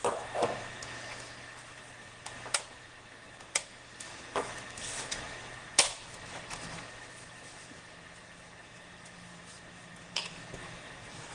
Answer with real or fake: fake